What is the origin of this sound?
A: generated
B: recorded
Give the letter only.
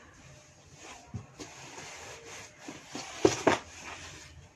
B